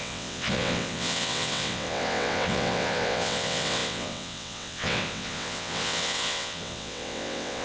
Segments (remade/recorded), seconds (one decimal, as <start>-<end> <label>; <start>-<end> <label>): 0.0-7.6 remade